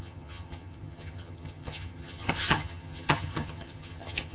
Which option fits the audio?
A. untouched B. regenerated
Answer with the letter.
B